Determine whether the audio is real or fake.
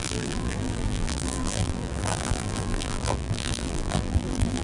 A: fake